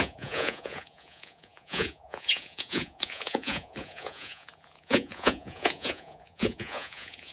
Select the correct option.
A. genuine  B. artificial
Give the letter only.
B